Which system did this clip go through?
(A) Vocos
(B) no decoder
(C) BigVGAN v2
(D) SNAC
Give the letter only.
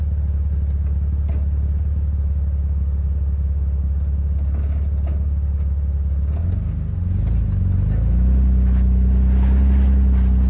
B